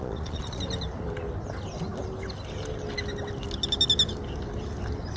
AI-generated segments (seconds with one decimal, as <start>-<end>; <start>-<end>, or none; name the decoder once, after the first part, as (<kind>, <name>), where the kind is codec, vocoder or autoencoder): 0.0-0.6 (vocoder, Vocos)